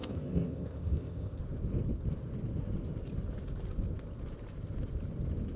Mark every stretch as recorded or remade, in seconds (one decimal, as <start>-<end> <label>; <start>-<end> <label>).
0.0-1.4 remade; 1.4-5.6 recorded